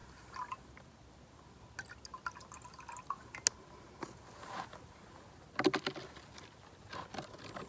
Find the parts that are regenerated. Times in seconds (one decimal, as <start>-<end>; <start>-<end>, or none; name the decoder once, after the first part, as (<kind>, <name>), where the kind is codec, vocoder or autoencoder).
none